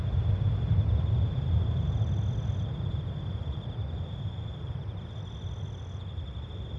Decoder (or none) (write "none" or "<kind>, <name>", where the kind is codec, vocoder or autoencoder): none